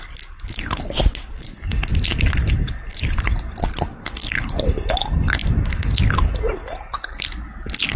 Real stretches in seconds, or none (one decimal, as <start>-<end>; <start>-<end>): 0.0-8.0